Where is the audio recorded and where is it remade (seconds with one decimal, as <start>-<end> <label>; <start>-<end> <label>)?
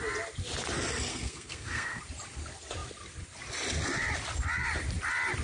0.0-1.1 recorded; 1.1-2.0 remade; 2.0-5.4 recorded